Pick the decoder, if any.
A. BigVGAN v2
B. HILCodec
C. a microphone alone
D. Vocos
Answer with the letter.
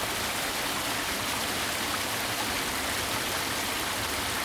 C